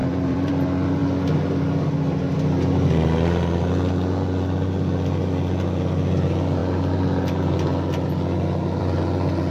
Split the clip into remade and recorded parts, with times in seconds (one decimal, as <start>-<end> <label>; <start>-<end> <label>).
0.0-0.5 remade; 0.5-9.5 recorded